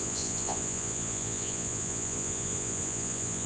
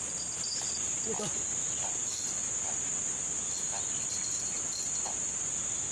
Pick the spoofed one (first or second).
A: first